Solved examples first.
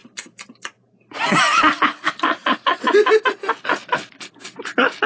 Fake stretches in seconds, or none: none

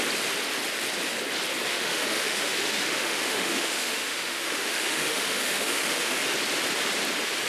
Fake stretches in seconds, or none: 1.7-6.2

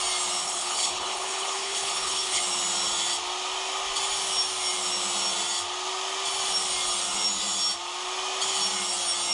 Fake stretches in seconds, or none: 0.4-2.4

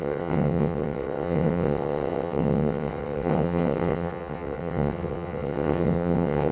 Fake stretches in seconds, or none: 0.0-6.5

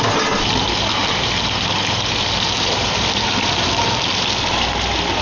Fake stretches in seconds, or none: 1.0-4.1

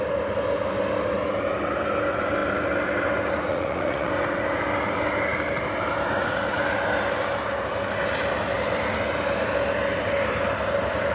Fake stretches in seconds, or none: 3.5-4.1

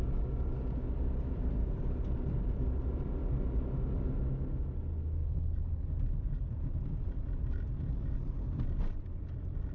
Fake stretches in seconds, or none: 1.2-1.8; 5.2-6.8

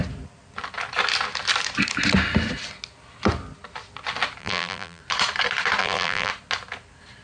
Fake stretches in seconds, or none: 4.4-5.0; 5.8-6.3